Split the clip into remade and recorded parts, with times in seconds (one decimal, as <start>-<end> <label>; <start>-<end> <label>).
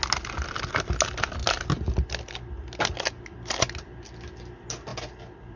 0.0-5.6 recorded